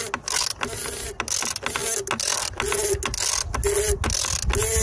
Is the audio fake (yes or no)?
no